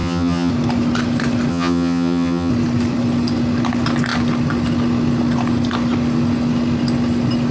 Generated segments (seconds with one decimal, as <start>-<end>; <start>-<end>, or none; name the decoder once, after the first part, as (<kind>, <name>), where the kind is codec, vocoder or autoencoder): 0.0-0.5 (vocoder, HiFi-GAN); 1.5-2.5